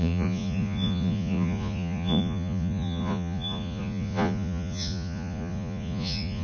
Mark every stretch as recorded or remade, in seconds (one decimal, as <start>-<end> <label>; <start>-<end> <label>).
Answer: 0.0-6.4 remade